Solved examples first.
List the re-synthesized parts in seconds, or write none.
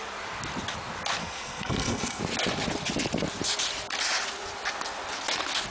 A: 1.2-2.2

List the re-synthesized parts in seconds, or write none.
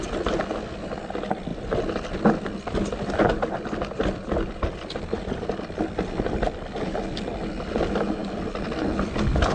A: none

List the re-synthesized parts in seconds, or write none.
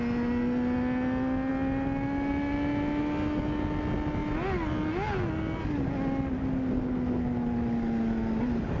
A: none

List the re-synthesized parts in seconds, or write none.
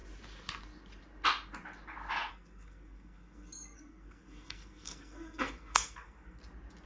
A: 2.3-6.4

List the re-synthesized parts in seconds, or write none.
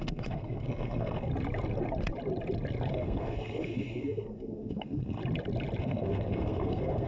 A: 0.0-1.3; 2.9-5.2; 5.8-7.1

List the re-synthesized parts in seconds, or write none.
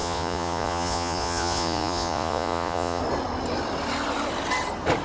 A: 0.0-3.0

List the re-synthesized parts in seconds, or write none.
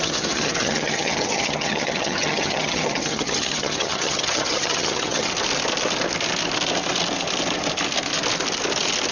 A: 0.0-5.3